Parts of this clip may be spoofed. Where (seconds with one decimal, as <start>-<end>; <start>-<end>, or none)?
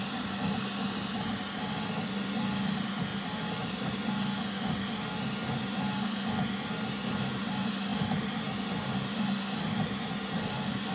3.1-3.9; 7.0-7.5